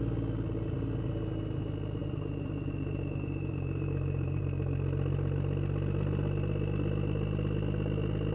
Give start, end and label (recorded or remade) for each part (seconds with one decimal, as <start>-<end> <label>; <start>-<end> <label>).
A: 0.0-2.0 recorded; 2.0-4.4 remade; 4.4-8.3 recorded